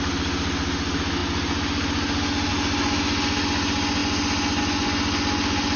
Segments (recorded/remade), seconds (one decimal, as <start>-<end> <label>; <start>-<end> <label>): 0.0-5.8 recorded